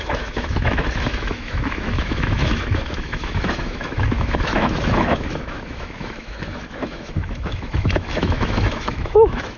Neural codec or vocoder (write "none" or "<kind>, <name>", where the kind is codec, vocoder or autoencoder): autoencoder, DAC-VAE